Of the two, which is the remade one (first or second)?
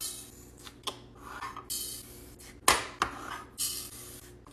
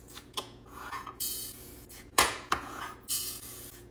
second